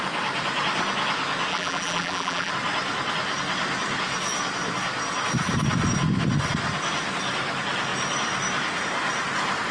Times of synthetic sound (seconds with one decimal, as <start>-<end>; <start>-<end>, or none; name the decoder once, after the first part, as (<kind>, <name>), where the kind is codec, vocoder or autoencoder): 1.5-2.5 (vocoder, BigVGAN v2)